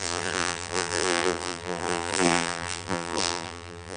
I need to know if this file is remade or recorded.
remade